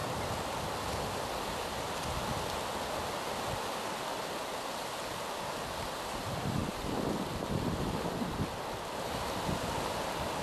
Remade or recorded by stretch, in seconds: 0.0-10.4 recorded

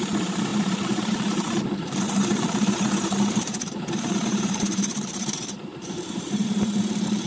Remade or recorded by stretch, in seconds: 0.0-7.3 remade